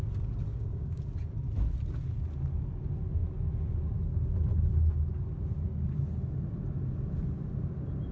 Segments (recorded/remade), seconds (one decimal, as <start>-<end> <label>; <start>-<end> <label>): 0.0-0.5 recorded; 0.5-1.0 remade; 1.0-8.1 recorded